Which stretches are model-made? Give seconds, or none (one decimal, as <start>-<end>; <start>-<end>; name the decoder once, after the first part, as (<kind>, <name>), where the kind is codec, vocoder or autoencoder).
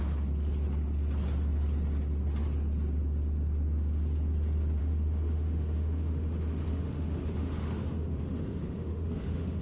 4.8-9.6 (autoencoder, DAC-VAE)